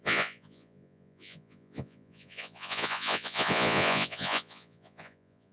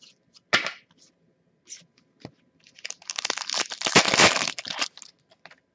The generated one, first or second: first